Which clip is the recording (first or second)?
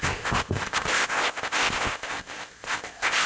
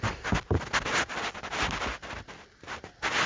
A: second